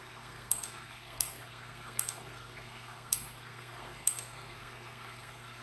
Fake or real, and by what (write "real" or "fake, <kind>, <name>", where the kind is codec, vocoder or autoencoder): fake, codec, SNAC